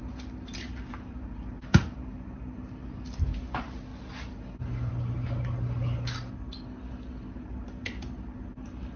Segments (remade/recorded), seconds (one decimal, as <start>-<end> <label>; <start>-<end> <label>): 0.0-9.0 recorded